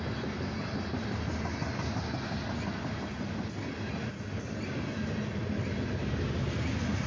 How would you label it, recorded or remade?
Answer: recorded